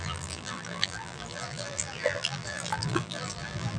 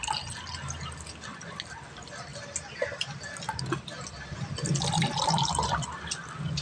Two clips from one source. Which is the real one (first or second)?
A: second